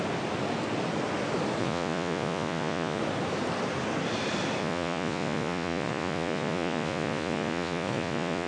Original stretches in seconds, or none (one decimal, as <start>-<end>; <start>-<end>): 0.0-1.6; 3.0-4.6